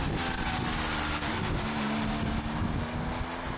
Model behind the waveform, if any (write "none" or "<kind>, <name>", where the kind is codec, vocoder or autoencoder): none